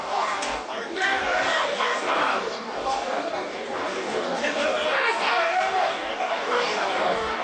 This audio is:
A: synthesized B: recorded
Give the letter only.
A